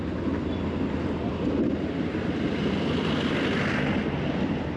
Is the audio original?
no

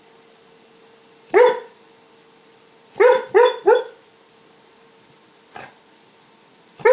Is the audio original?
no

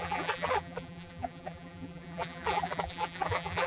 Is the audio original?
no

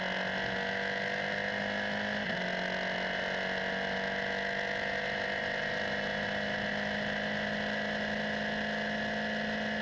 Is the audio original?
yes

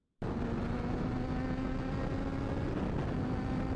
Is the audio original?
yes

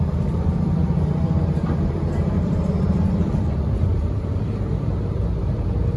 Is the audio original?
no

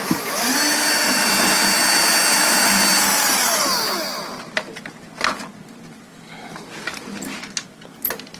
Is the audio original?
yes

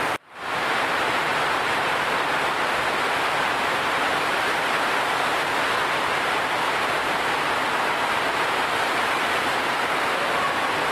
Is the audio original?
no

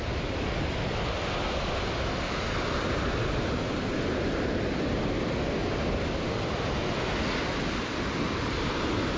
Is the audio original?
yes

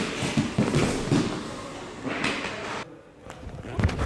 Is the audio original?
yes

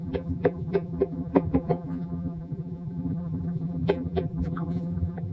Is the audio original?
no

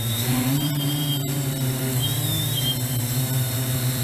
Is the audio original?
no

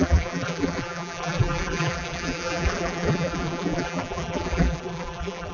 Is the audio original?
no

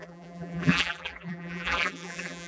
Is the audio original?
no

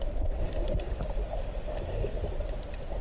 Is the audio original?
yes